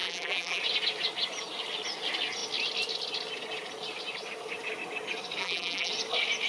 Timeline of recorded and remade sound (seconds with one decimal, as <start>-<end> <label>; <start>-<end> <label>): 0.0-0.6 remade; 0.6-5.4 recorded; 5.4-5.9 remade; 5.9-6.5 recorded